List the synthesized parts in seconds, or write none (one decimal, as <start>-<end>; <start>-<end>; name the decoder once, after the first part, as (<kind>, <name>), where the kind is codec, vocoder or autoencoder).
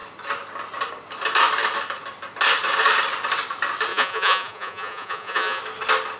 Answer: 3.9-5.6 (vocoder, Vocos)